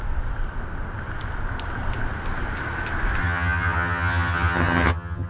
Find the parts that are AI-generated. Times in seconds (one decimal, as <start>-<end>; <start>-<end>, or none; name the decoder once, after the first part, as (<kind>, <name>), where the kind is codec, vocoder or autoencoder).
3.2-5.3 (vocoder, HiFi-GAN)